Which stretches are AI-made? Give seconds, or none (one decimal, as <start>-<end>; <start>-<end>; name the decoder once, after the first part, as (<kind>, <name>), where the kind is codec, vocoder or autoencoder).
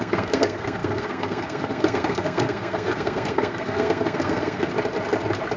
0.0-4.7 (codec, SNAC)